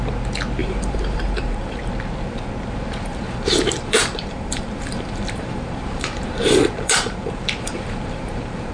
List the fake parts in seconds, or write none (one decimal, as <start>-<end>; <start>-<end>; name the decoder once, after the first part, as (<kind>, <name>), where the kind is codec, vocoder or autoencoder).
0.6-1.8 (vocoder, BigVGAN v2); 3.1-8.7